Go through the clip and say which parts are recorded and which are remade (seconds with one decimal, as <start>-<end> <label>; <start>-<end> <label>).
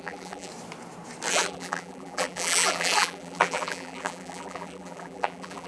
0.0-0.5 remade; 0.5-1.3 recorded; 1.3-5.7 remade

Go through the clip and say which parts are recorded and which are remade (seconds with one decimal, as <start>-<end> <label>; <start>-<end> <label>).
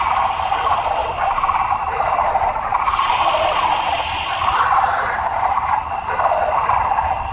0.0-7.3 recorded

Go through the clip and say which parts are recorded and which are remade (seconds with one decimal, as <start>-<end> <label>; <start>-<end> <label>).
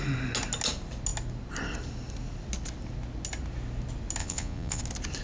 0.0-4.2 recorded; 4.2-4.8 remade; 4.8-5.2 recorded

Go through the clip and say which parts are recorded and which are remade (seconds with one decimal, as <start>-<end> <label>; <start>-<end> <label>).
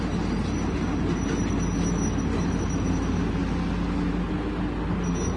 0.0-5.4 recorded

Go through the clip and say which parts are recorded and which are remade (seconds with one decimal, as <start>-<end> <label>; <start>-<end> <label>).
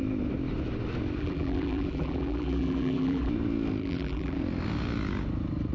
0.0-1.2 recorded; 1.2-3.3 remade; 3.3-3.8 recorded; 3.8-4.4 remade; 4.4-5.7 recorded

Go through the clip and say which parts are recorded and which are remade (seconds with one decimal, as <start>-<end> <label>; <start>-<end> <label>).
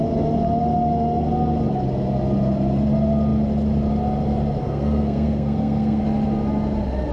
0.0-4.6 recorded; 4.6-6.0 remade; 6.0-7.1 recorded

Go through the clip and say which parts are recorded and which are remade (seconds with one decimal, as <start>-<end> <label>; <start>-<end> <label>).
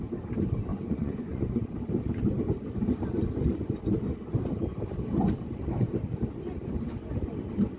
0.0-0.7 recorded; 0.7-1.6 remade; 1.6-7.8 recorded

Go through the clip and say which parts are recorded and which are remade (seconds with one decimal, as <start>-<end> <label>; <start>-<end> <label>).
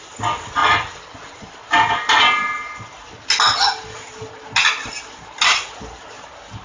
0.0-6.6 recorded